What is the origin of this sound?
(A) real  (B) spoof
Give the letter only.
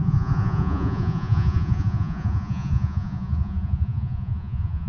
B